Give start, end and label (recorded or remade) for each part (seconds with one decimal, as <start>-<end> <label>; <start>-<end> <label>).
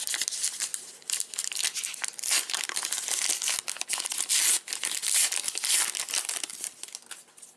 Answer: 0.0-7.6 recorded